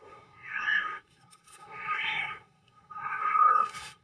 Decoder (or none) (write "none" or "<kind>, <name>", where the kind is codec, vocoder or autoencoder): codec, SNAC